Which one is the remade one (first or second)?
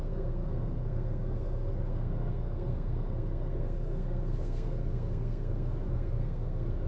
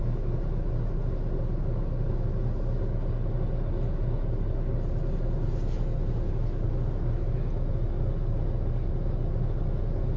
first